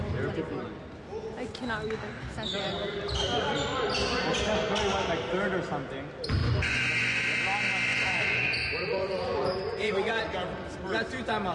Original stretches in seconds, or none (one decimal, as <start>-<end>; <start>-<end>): 0.0-6.4; 7.2-7.9; 10.2-11.5